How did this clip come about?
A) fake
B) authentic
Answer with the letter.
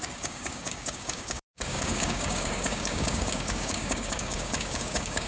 A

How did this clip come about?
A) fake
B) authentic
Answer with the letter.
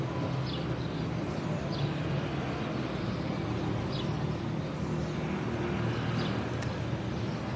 B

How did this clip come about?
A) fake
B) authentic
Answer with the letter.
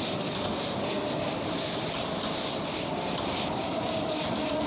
A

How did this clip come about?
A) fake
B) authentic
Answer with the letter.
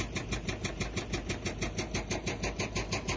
B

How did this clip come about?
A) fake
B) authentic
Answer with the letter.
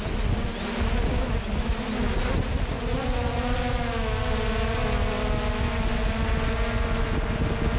B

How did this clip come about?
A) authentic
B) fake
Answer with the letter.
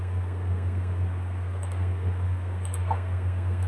B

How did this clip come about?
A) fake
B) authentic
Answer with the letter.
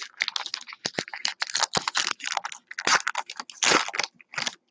B